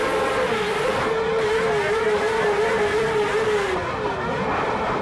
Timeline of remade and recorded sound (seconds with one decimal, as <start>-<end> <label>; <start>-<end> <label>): 0.0-5.0 recorded